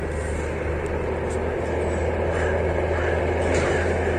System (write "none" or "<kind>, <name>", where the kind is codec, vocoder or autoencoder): none